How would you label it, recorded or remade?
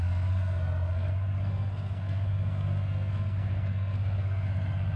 remade